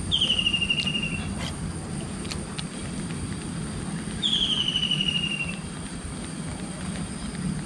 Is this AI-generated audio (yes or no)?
no